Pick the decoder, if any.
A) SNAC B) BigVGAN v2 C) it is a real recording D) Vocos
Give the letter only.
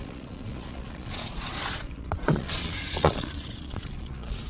D